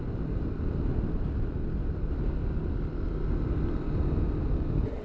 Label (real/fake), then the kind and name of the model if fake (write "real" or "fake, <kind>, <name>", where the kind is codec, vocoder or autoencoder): real